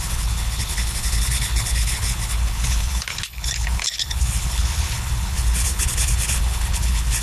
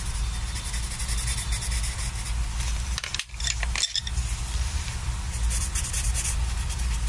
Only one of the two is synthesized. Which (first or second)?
first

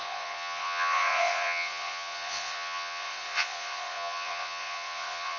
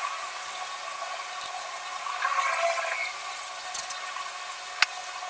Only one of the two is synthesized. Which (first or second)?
first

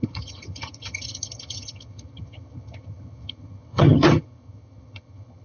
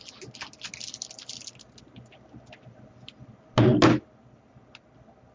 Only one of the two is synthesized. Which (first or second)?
first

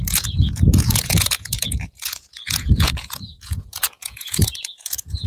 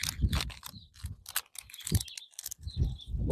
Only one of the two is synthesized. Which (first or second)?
first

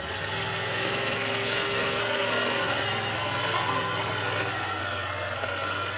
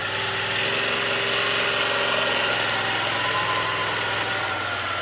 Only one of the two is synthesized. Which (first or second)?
first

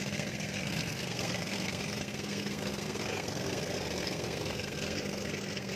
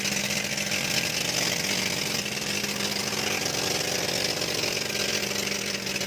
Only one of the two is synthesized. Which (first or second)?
first